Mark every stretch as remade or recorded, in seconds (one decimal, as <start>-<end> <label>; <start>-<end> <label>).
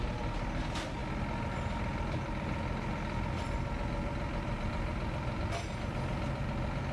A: 0.0-6.9 recorded